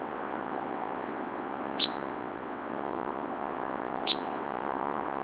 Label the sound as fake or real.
fake